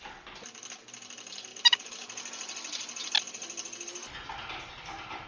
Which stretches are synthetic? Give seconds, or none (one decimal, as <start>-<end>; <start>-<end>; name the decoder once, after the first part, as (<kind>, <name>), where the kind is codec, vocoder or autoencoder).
none